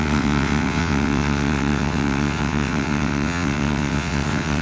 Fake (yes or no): yes